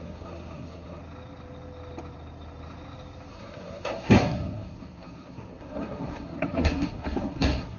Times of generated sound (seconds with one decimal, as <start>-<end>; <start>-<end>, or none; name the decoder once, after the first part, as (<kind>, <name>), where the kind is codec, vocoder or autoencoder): 0.0-1.0 (codec, SNAC); 3.3-7.8